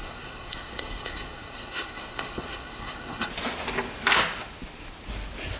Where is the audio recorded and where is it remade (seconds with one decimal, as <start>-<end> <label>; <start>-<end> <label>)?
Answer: 0.0-3.3 remade; 3.3-5.6 recorded